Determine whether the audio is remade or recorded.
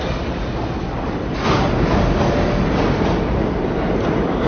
recorded